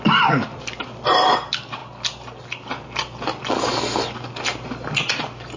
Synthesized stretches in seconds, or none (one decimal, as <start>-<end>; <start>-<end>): none